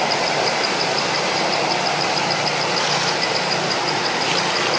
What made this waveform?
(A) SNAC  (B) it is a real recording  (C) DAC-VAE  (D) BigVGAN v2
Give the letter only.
B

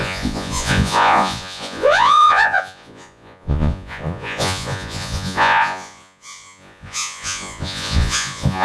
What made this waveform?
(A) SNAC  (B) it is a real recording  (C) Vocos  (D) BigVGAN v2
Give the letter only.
C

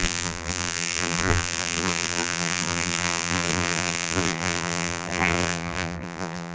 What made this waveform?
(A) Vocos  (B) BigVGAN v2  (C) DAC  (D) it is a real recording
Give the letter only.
B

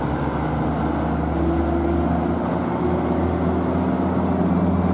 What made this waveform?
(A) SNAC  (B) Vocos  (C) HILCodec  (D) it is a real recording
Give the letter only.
D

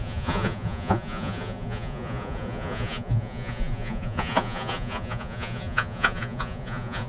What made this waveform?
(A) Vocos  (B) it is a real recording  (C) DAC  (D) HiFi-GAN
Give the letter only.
A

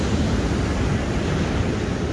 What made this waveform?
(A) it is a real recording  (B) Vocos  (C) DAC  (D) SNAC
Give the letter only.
A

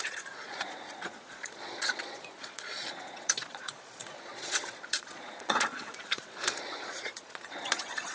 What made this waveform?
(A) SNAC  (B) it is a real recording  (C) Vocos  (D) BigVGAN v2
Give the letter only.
C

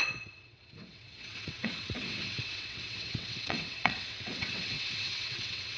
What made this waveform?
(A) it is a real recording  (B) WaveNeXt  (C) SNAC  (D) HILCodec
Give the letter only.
B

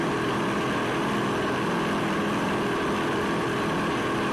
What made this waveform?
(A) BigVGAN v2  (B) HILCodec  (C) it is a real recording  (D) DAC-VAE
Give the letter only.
A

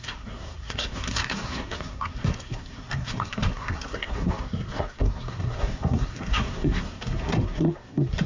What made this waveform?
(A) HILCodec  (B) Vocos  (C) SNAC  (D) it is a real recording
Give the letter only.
C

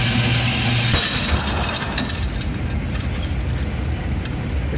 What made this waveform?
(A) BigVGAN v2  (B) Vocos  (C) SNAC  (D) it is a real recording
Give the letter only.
D